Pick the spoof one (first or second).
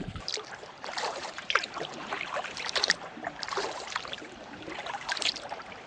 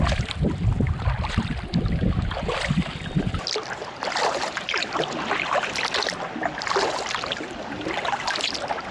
first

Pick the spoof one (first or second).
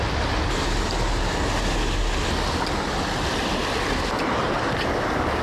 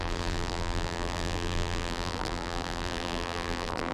second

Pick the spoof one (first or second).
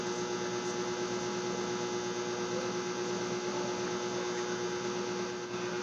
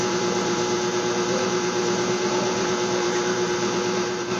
second